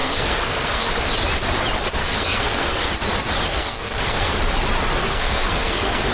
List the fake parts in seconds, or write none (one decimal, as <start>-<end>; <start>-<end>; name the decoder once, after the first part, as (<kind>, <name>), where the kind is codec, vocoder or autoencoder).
0.0-0.9 (codec, SNAC); 2.0-2.9; 3.5-4.3; 5.0-6.1